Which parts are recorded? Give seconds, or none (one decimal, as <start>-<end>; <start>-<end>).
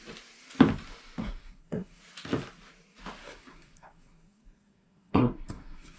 0.0-1.2; 2.0-3.2